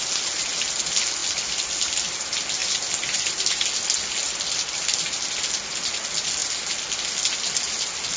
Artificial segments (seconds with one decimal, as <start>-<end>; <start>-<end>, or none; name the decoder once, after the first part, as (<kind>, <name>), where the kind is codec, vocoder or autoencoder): none